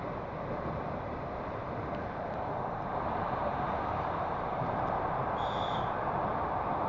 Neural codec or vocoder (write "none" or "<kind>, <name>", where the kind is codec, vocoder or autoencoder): vocoder, BigVGAN v2